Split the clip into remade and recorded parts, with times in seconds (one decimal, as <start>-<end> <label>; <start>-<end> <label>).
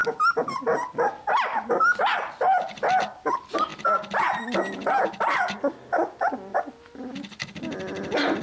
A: 0.0-8.4 recorded